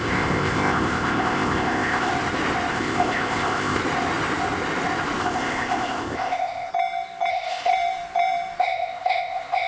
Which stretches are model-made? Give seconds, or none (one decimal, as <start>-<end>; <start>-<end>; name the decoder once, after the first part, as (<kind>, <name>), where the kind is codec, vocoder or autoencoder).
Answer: 0.0-2.1 (codec, ZipCodec); 2.7-3.8; 5.2-6.7; 7.3-7.7; 8.6-9.7